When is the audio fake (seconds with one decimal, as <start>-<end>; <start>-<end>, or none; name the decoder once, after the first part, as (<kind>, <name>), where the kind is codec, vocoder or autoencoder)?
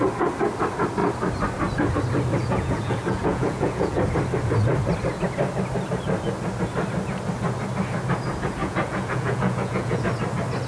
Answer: 2.4-4.0 (vocoder, Vocos); 8.6-10.0